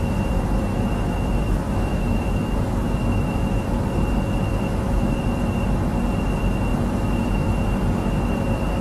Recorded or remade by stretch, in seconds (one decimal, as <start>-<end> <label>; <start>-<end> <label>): 0.0-0.7 recorded; 0.7-3.6 remade; 3.6-4.5 recorded; 4.5-5.1 remade; 5.1-6.7 recorded; 6.7-7.5 remade; 7.5-8.8 recorded